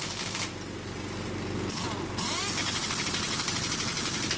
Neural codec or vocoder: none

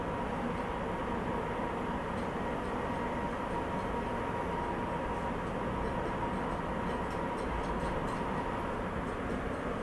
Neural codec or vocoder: none